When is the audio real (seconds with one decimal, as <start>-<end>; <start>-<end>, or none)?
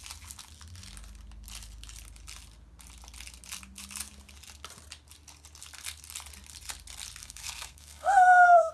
0.0-7.2